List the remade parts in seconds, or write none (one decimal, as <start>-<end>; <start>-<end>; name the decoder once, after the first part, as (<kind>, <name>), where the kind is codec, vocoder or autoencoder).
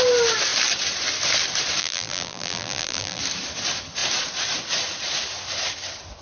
1.8-3.2 (vocoder, BigVGAN v2)